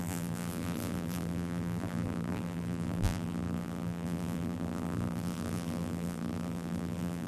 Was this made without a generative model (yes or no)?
no